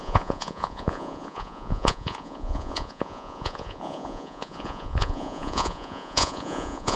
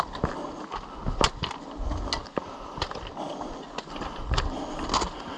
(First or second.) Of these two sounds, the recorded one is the second